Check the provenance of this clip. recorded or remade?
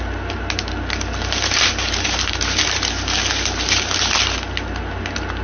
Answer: recorded